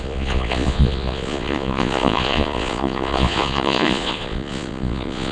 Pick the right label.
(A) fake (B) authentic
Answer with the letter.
A